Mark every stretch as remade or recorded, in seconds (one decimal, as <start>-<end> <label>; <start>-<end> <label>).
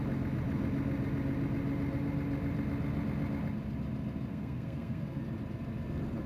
0.0-4.3 recorded; 4.3-5.2 remade; 5.2-6.3 recorded